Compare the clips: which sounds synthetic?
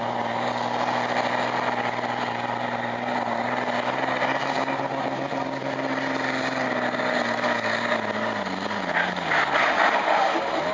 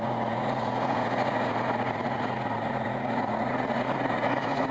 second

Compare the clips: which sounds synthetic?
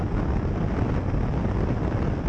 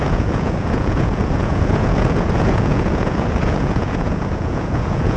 second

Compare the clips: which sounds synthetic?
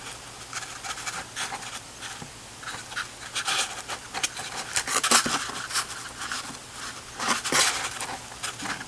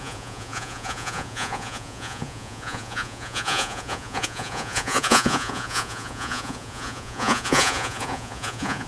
second